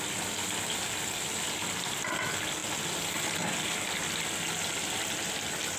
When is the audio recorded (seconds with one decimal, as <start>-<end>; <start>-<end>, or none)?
0.0-5.8